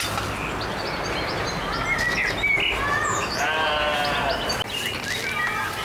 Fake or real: real